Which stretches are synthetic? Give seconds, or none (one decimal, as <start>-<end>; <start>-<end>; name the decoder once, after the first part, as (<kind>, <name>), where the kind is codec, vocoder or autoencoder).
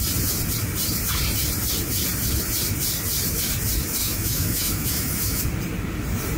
4.0-5.4 (autoencoder, DAC-VAE)